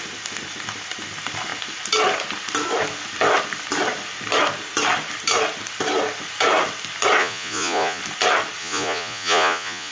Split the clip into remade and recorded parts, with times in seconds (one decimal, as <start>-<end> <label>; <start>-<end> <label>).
0.0-7.2 recorded; 7.2-8.0 remade; 8.0-8.6 recorded; 8.6-9.9 remade